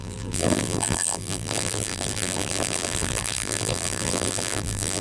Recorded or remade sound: remade